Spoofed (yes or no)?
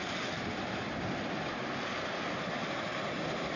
no